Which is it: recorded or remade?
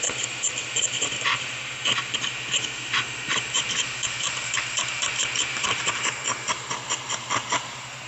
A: remade